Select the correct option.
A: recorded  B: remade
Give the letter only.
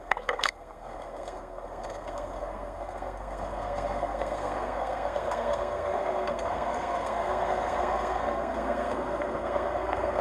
B